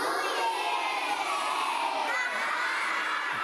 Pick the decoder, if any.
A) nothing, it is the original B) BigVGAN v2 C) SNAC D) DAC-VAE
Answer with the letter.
B